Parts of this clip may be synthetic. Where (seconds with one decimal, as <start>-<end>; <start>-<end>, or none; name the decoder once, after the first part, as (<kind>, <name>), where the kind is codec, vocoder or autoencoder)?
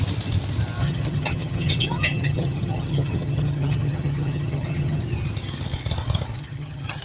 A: 0.8-5.0 (vocoder, HiFi-GAN); 6.4-7.0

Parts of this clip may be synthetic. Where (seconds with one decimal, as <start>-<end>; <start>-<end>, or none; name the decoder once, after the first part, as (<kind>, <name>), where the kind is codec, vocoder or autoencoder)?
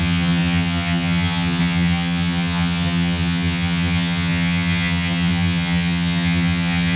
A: 0.0-7.0 (vocoder, HiFi-GAN)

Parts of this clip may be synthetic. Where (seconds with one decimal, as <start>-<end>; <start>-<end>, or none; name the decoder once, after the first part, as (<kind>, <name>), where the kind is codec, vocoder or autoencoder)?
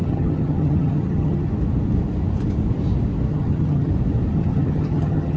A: 0.0-1.5 (vocoder, HiFi-GAN); 3.3-3.9; 4.3-5.4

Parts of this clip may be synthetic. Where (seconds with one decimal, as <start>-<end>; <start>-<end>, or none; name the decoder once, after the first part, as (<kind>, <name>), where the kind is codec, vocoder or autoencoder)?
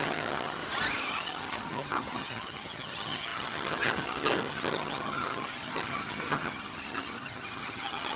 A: 0.0-0.6 (vocoder, HiFi-GAN); 1.1-8.2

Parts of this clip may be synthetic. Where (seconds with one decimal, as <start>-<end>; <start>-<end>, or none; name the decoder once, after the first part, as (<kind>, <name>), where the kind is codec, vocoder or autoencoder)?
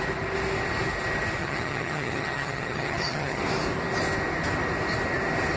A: 1.4-3.4 (vocoder, HiFi-GAN)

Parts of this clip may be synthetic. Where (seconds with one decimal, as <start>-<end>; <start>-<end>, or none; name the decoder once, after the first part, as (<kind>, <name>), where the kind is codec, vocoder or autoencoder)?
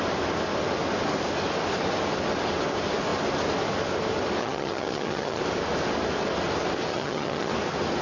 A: 4.4-5.4 (vocoder, HiFi-GAN); 6.9-7.5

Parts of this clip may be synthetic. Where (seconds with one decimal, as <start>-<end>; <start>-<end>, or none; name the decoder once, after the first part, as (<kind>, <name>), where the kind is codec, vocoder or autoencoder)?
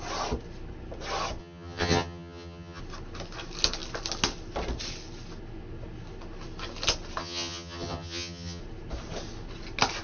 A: 1.4-2.8 (vocoder, HiFi-GAN); 7.2-8.6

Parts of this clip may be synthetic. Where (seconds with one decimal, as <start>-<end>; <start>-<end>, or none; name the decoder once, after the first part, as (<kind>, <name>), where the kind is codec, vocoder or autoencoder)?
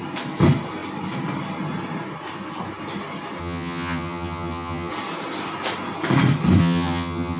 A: 3.4-4.9 (vocoder, HiFi-GAN); 6.6-7.4